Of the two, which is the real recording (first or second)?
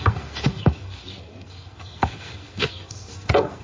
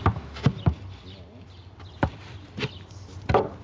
second